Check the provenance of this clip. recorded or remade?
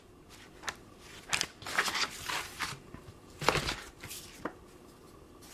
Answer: recorded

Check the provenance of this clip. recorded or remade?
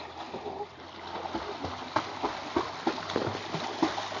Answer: recorded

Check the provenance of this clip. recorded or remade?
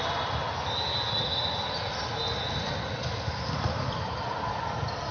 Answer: recorded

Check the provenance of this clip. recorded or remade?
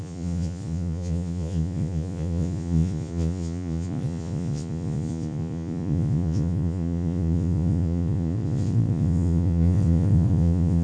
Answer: remade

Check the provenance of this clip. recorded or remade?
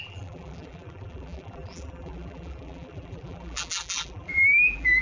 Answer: remade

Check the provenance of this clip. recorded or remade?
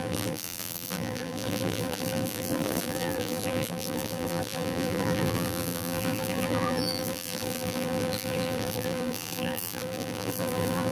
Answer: remade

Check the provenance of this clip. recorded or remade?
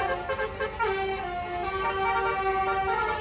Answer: recorded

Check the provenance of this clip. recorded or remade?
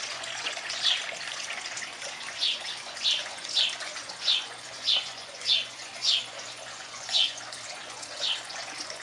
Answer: remade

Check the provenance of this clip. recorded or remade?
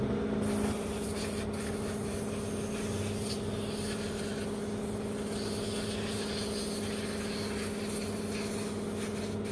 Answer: recorded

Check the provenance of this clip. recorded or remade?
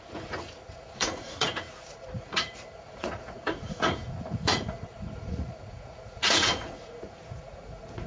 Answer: remade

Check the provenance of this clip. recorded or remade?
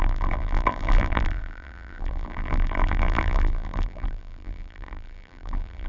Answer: remade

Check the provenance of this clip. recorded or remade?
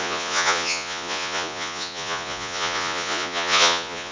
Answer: remade